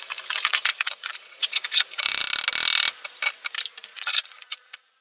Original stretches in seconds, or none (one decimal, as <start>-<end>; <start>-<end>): 2.2-3.8

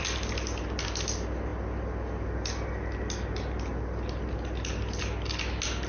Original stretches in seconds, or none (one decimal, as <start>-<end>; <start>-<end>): 0.0-5.9

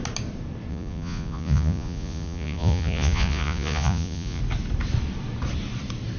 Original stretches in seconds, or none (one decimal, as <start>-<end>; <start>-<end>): 0.0-0.7; 4.4-6.2

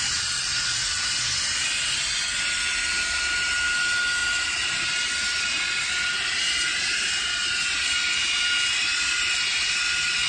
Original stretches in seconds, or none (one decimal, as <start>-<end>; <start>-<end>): 0.0-10.3

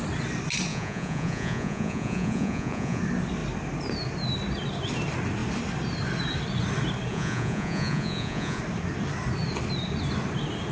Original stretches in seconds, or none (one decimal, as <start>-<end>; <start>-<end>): 0.0-0.7; 3.0-7.1; 8.6-10.7